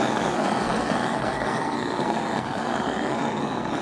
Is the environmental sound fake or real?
fake